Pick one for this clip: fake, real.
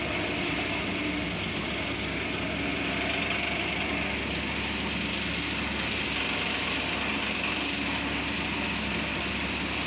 real